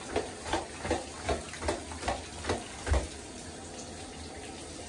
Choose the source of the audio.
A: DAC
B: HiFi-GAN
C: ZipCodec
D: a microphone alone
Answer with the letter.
D